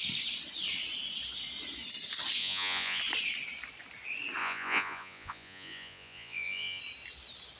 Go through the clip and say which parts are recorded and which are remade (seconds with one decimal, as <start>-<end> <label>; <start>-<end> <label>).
0.0-2.4 recorded; 2.4-3.0 remade; 3.0-4.4 recorded; 4.4-6.8 remade; 6.8-7.6 recorded